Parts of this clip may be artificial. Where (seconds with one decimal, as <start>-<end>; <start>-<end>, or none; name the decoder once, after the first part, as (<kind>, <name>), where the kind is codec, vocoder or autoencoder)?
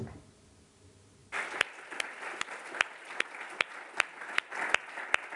none